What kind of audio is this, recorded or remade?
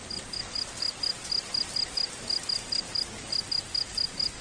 recorded